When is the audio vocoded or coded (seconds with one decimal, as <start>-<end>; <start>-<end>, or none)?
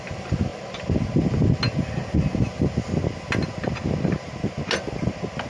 none